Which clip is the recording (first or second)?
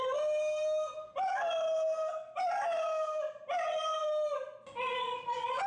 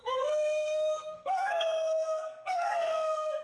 first